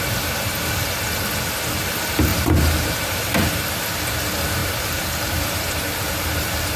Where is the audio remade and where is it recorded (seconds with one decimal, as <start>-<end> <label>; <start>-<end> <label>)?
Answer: 0.0-2.3 recorded; 2.3-3.6 remade; 3.6-4.6 recorded; 4.6-6.8 remade